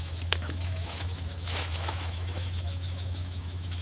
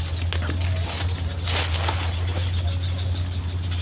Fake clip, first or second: first